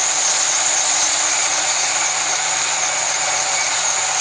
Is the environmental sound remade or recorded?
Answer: remade